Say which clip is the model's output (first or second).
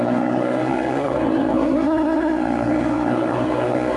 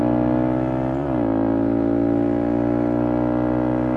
first